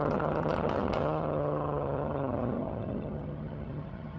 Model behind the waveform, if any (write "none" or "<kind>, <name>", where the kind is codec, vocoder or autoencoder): vocoder, HiFi-GAN